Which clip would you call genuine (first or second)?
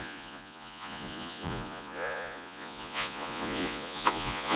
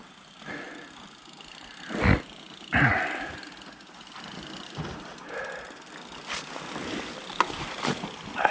second